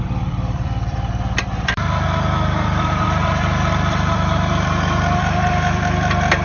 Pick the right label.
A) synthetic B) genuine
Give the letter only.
A